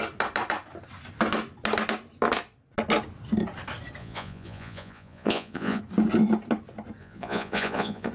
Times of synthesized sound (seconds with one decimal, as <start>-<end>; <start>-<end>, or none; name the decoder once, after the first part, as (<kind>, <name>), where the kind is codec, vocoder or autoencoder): 4.0-5.8 (vocoder, Vocos); 7.0-8.1